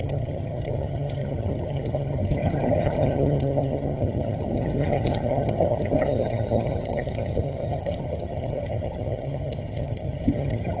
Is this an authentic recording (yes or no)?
no